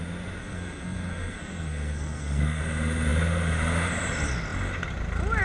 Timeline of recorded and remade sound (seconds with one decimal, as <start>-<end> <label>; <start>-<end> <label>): 0.0-0.4 recorded; 0.4-2.6 remade; 2.6-5.4 recorded